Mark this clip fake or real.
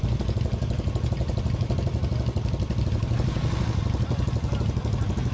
real